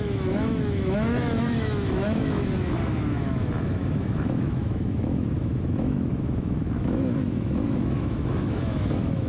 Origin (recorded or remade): remade